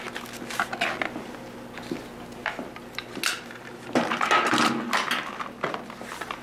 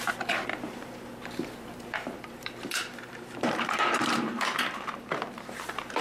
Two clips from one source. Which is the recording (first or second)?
first